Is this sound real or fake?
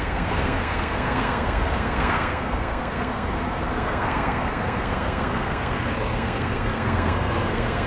fake